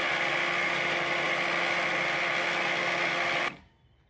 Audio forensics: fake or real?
real